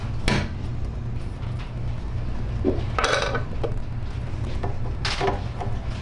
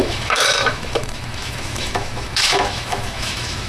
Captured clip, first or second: first